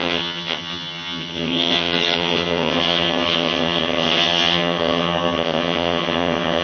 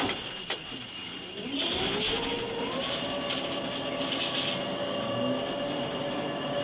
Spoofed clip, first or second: first